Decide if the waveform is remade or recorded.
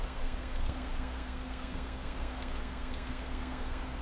remade